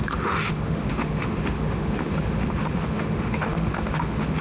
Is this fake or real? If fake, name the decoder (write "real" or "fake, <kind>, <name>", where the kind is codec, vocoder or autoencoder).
fake, autoencoder, DAC-VAE